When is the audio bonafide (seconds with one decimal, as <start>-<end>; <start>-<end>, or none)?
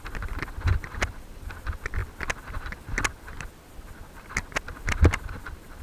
0.0-5.8